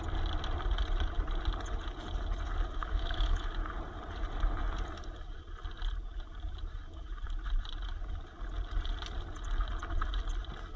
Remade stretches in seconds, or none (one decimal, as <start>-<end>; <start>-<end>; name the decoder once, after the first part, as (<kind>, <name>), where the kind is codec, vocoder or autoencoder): 2.8-3.5 (autoencoder, DAC-VAE)